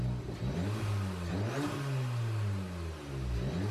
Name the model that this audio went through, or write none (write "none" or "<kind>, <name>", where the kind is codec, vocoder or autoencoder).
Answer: none